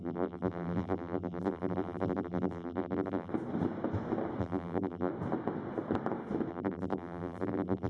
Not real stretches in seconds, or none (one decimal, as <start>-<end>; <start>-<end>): 0.0-3.3; 4.4-5.1; 6.5-7.9

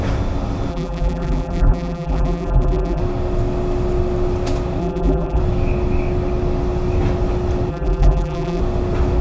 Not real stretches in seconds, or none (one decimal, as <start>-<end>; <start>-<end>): 0.7-3.0; 4.8-5.4; 7.7-8.6